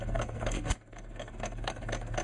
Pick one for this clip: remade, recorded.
remade